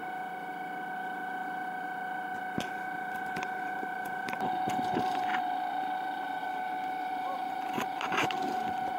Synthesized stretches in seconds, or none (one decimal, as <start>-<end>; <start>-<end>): 2.6-9.0